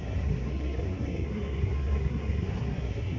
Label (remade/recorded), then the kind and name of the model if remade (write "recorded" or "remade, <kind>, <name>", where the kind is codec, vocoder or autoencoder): remade, codec, SNAC